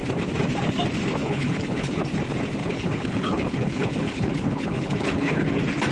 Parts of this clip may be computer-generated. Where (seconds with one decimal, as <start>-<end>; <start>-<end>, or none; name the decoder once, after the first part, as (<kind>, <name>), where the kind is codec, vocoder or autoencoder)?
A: 1.2-2.0 (codec, HILCodec); 2.6-5.5